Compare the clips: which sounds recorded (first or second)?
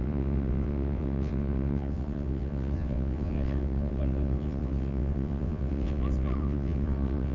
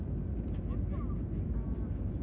second